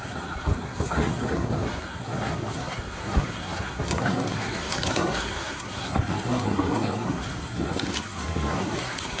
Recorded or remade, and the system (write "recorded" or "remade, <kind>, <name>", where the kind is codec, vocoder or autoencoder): remade, codec, SNAC